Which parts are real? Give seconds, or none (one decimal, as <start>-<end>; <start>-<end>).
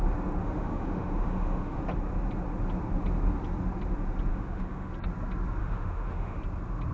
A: 0.0-0.4; 1.8-4.3; 4.9-5.6; 6.4-6.9